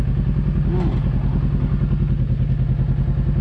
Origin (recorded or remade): recorded